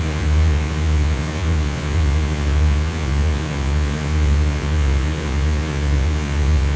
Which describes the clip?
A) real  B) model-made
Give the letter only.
B